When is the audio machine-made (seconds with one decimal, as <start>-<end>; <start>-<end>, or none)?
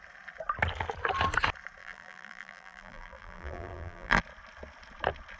1.8-4.2